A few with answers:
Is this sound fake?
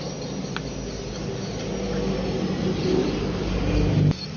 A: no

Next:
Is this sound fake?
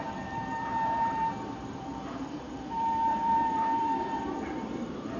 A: yes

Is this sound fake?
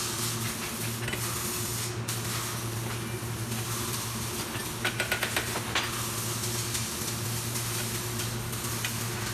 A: no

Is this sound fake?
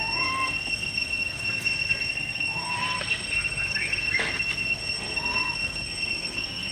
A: yes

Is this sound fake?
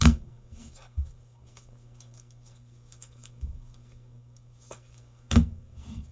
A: yes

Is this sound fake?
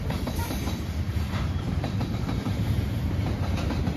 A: yes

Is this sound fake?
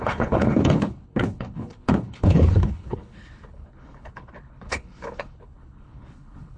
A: yes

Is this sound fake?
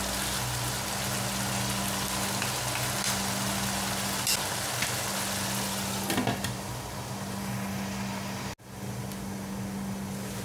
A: no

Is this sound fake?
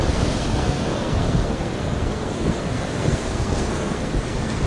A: yes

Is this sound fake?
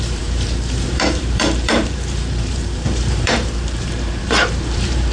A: yes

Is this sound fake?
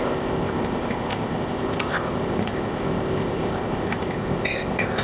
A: yes